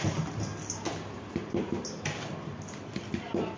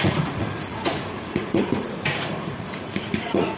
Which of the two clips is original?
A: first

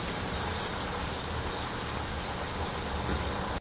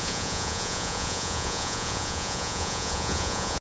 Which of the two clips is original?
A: first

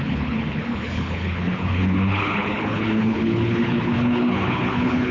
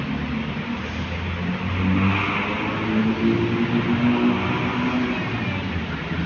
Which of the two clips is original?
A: second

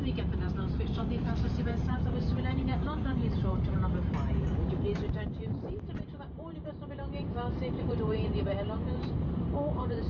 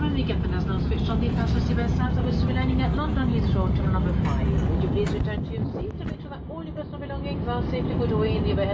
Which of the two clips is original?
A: second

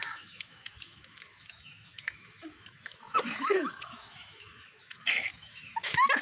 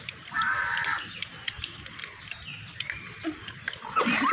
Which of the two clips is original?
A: second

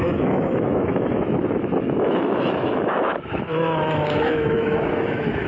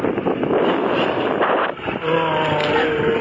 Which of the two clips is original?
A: second